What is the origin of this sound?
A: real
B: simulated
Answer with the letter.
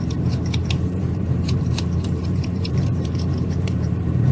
B